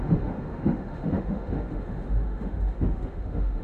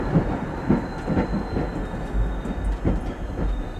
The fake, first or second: first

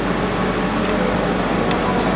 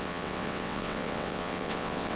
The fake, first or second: second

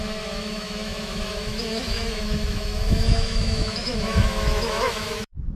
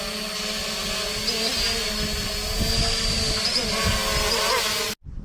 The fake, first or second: first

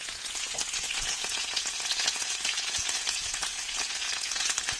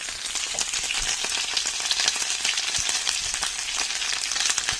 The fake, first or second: first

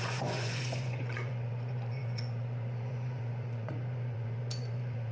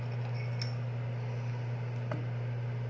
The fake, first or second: first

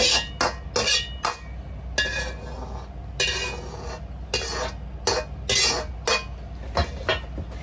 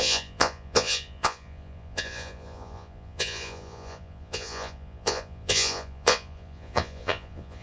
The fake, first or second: second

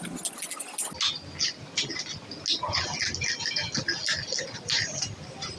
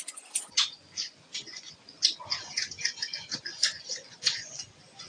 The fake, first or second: second